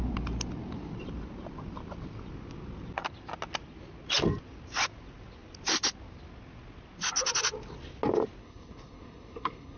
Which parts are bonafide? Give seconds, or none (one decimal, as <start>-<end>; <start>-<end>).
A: 0.0-8.4